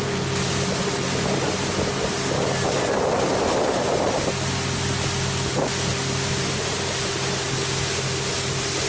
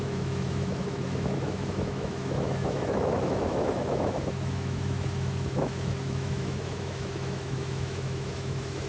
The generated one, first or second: second